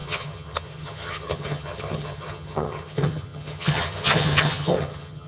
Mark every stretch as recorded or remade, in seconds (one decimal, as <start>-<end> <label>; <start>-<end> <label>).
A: 0.0-5.3 remade